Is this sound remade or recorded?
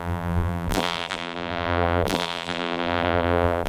remade